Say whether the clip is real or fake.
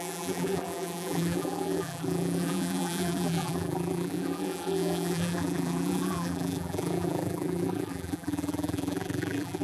fake